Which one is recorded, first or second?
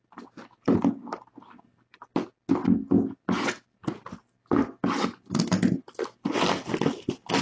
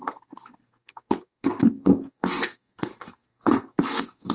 first